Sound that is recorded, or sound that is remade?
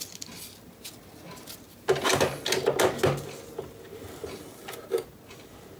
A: recorded